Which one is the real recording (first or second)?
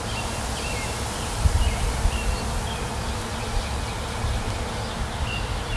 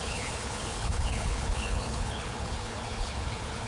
first